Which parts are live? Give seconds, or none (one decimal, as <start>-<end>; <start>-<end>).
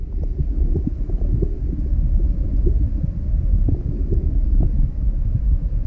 0.0-3.5; 5.4-5.9